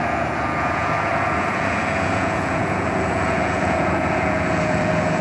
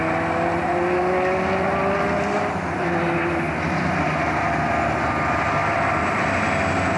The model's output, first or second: first